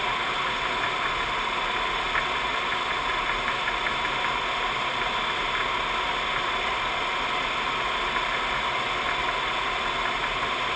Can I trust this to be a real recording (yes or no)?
yes